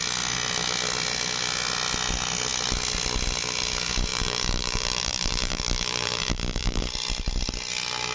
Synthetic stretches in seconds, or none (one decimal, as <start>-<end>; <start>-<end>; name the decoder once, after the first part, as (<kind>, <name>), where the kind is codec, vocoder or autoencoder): 4.1-6.8 (vocoder, BigVGAN v2)

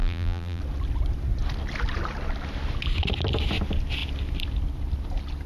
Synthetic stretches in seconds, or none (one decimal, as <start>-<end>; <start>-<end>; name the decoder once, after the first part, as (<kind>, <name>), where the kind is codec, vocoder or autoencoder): 0.0-0.6 (vocoder, BigVGAN v2)

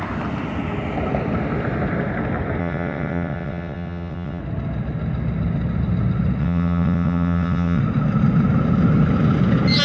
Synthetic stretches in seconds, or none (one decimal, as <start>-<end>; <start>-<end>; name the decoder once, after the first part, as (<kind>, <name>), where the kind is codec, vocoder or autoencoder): 2.6-4.4 (vocoder, WaveNeXt); 6.4-7.8

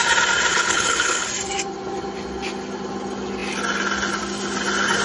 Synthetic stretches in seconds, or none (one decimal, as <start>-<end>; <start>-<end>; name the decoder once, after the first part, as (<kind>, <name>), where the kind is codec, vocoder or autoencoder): 0.5-1.3 (codec, HILCodec)

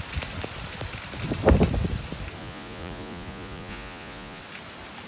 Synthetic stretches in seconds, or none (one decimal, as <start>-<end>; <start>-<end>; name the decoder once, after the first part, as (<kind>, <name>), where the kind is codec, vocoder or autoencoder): 2.4-4.4 (vocoder, Vocos)

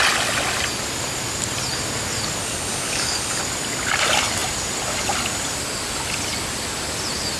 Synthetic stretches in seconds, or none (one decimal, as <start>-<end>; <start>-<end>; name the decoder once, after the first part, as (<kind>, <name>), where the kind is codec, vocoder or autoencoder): 2.4-3.4 (codec, DAC)